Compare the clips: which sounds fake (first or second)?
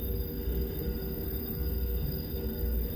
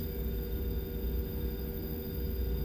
first